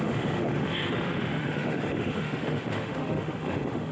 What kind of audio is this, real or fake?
fake